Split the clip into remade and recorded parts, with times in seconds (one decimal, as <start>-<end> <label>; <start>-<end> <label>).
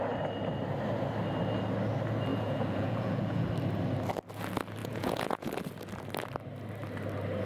0.0-2.3 recorded; 2.3-3.5 remade; 3.5-4.8 recorded; 4.8-5.5 remade; 5.5-7.5 recorded